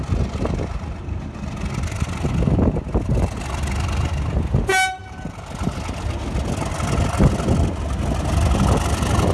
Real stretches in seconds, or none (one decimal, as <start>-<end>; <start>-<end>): 0.0-9.3